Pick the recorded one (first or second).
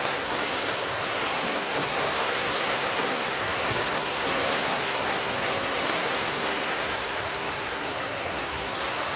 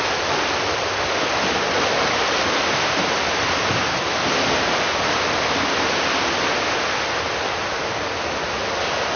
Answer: second